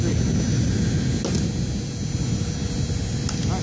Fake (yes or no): no